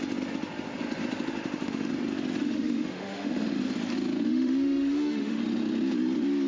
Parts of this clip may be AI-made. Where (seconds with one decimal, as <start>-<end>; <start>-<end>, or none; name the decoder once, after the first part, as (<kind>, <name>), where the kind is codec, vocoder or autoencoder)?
1.3-1.9 (autoencoder, DAC-VAE); 2.4-3.6; 4.3-5.4